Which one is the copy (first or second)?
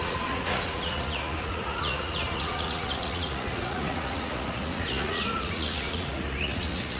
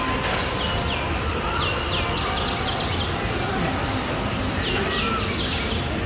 first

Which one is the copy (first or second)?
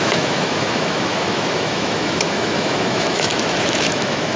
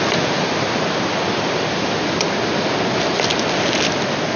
first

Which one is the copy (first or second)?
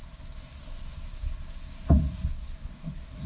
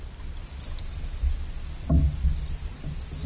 first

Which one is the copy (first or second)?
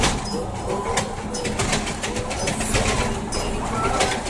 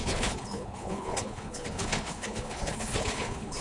second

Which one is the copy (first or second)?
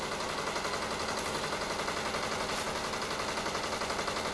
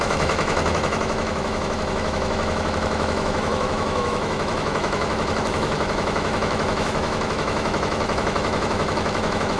second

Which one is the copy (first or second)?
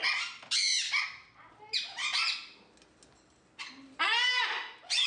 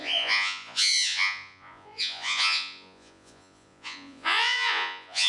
second